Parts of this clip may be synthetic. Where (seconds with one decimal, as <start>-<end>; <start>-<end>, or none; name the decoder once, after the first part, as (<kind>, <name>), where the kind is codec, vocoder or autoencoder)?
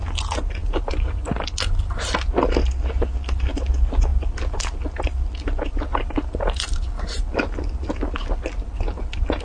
none